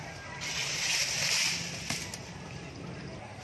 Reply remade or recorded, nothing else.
recorded